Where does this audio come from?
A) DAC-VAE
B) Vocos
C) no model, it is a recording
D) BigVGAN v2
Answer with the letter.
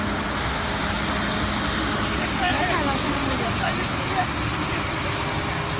C